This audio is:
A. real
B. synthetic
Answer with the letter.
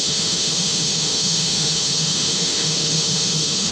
B